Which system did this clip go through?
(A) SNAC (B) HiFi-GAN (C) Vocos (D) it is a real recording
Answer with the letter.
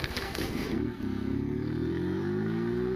A